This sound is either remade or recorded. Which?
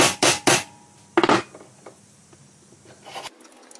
recorded